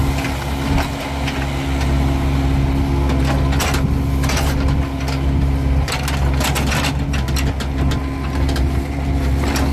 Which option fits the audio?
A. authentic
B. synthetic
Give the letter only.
A